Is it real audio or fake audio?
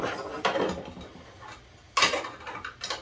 real